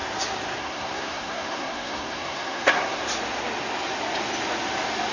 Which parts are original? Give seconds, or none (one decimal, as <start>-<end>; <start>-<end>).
0.0-0.6; 3.0-5.1